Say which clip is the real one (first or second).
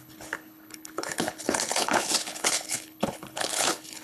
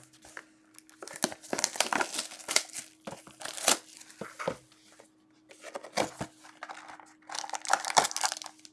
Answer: second